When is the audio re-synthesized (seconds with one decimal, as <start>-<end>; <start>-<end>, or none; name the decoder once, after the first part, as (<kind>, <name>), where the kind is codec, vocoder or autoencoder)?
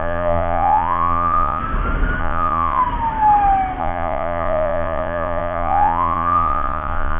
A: 0.0-1.6 (vocoder, Vocos); 2.2-2.8; 3.8-7.2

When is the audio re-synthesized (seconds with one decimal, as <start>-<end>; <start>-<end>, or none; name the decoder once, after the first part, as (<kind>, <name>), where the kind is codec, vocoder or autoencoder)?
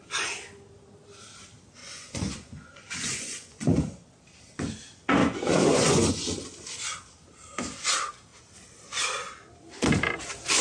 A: 1.8-3.8 (vocoder, Vocos); 5.2-6.1